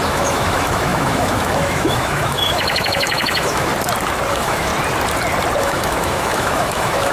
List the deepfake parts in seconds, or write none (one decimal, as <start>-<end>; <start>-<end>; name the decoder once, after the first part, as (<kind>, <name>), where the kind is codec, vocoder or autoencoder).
0.0-3.7 (autoencoder, DAC-VAE); 4.3-4.7; 5.6-7.1